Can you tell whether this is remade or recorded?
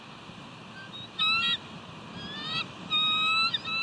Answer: recorded